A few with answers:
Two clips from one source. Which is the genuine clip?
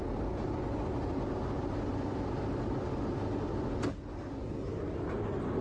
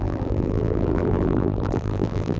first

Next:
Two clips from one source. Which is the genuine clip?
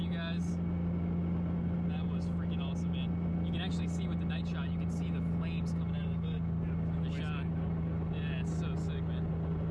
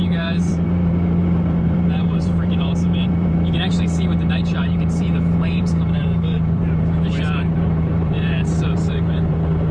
first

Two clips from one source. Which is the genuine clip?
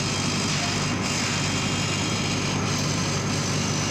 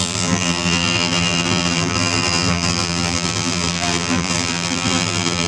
first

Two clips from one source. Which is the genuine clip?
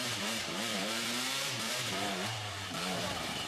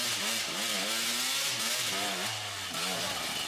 second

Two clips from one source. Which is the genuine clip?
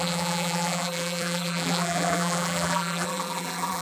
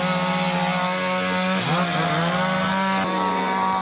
second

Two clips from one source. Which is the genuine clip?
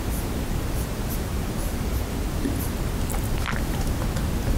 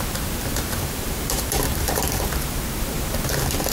first